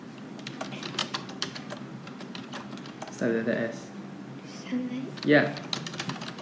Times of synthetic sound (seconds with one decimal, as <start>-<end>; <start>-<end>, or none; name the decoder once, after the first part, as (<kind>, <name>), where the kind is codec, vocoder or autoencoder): 1.0-2.8 (vocoder, BigVGAN v2)

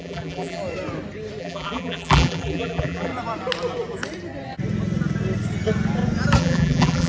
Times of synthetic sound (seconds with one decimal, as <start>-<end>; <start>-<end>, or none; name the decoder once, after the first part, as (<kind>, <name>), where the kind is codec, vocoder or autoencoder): 0.0-0.6 (vocoder, BigVGAN v2); 1.4-3.1; 6.4-7.1

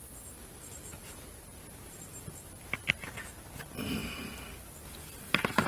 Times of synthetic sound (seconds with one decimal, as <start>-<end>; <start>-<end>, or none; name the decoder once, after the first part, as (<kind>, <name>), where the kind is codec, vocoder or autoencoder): 0.9-2.9 (vocoder, BigVGAN v2)

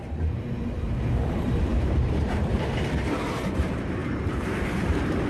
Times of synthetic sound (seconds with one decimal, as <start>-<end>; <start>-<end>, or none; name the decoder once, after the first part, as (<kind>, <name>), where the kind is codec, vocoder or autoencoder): 0.0-5.3 (vocoder, BigVGAN v2)

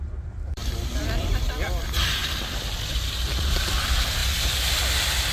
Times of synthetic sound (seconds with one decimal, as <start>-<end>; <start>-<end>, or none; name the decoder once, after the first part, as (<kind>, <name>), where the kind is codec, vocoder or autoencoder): 0.0-5.3 (vocoder, BigVGAN v2)

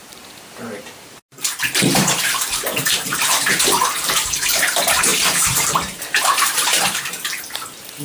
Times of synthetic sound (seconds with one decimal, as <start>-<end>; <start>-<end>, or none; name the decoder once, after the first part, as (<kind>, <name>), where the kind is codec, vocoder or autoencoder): 1.8-8.0 (vocoder, BigVGAN v2)

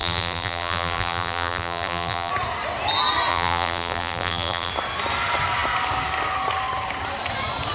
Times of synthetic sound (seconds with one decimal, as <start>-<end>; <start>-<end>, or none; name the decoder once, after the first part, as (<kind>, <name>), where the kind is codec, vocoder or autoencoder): 0.0-2.3 (vocoder, BigVGAN v2); 3.3-4.7

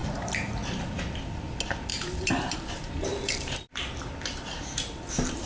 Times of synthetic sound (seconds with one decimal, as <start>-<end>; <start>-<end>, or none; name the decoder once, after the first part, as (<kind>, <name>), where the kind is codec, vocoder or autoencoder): 0.0-0.6 (vocoder, BigVGAN v2); 1.9-5.5